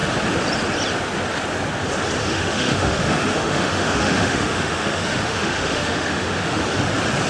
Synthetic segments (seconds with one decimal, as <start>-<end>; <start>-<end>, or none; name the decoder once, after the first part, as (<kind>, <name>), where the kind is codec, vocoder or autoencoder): 2.2-6.6 (autoencoder, DAC-VAE)